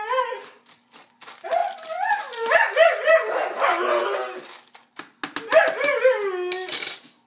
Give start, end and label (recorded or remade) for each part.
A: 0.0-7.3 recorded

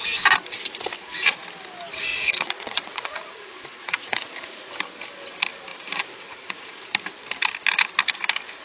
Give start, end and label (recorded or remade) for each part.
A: 0.0-2.1 recorded; 2.1-4.7 remade; 4.7-5.7 recorded; 5.7-6.9 remade; 6.9-8.6 recorded